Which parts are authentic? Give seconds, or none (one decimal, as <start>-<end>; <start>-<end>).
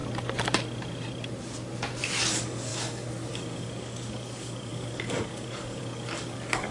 0.0-2.3